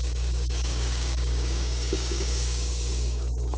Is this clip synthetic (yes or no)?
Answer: yes